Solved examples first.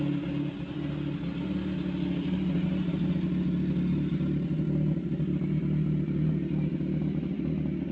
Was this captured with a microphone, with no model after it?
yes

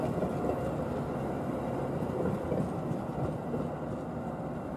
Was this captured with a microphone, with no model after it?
yes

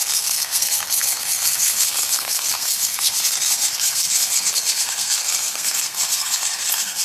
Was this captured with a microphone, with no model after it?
no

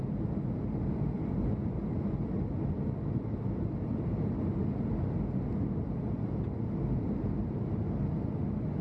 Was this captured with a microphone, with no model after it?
yes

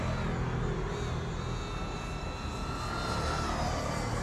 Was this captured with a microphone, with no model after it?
yes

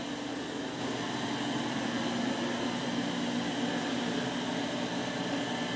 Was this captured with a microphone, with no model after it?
yes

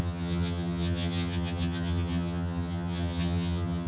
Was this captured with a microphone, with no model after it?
no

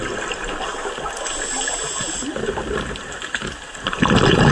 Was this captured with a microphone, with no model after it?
yes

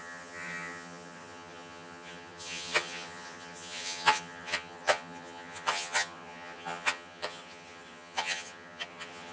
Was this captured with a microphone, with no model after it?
no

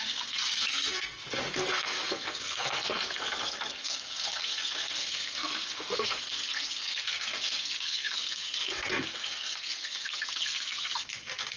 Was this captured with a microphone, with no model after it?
no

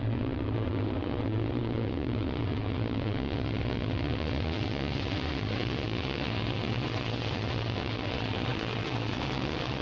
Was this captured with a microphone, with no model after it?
no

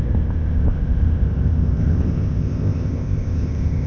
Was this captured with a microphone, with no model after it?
no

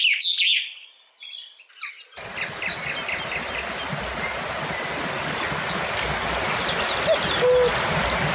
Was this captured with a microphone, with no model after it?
yes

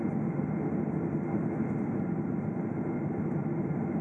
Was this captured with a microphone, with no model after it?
yes